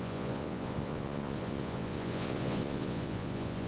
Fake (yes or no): yes